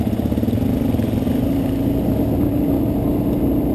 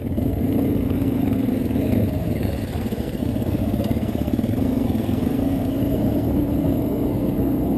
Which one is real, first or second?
first